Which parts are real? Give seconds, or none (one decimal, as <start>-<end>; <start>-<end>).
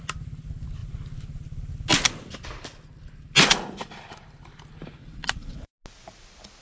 0.0-5.0; 5.7-6.6